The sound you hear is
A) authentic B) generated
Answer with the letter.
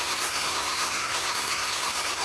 B